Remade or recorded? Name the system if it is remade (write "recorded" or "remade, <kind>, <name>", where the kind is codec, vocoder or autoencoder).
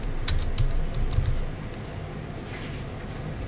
recorded